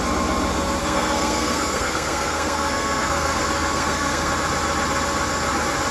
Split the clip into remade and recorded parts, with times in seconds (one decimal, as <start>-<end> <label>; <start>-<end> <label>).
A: 0.0-0.8 recorded; 0.8-4.3 remade; 4.3-5.9 recorded